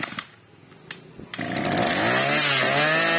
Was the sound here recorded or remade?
recorded